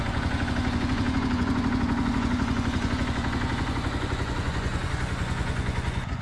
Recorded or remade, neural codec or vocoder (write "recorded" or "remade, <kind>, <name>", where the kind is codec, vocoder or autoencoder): remade, vocoder, Vocos